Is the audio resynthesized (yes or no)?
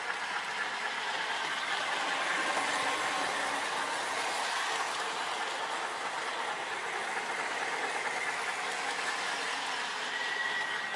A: no